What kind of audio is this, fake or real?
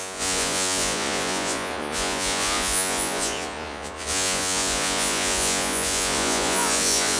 fake